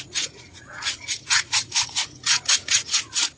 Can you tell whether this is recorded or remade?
remade